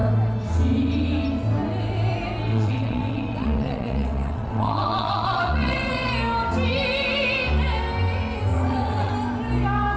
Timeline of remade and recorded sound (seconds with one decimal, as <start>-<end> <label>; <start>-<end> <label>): 0.0-2.5 recorded; 2.5-6.1 remade; 6.1-8.5 recorded; 8.5-9.1 remade; 9.1-10.0 recorded